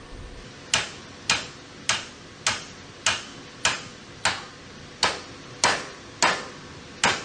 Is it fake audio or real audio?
real